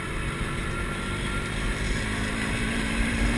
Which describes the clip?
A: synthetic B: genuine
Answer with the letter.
A